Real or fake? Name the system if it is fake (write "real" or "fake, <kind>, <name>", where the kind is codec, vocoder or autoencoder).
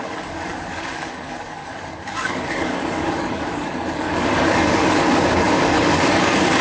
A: fake, codec, DAC